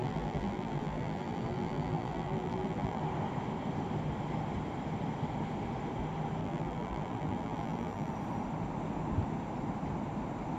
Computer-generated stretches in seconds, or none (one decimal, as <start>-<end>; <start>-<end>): 0.0-3.0; 6.4-8.1